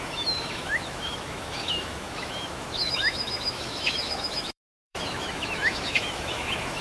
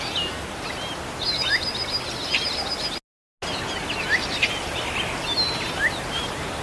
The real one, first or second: second